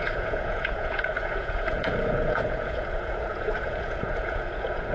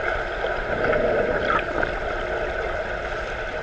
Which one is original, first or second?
second